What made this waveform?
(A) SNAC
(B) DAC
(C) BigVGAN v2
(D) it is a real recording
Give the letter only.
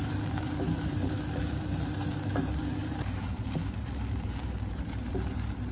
C